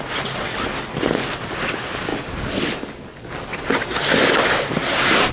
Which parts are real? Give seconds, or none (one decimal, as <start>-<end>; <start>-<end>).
0.0-5.3